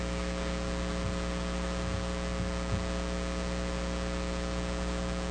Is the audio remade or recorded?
recorded